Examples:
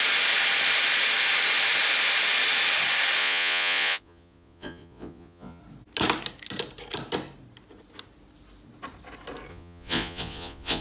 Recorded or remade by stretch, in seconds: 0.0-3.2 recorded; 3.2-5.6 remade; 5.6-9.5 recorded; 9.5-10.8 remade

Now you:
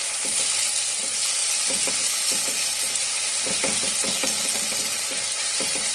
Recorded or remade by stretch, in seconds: 0.0-5.9 recorded

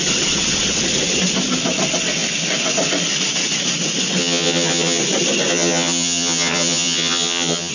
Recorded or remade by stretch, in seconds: 0.0-4.2 recorded; 4.2-5.0 remade; 5.0-5.5 recorded; 5.5-7.7 remade

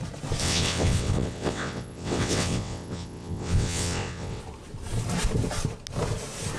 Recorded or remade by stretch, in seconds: 0.0-0.4 recorded; 0.4-4.4 remade; 4.4-6.6 recorded

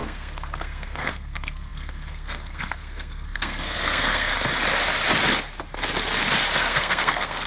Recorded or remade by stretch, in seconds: 0.0-4.3 remade; 4.3-6.6 recorded; 6.6-7.5 remade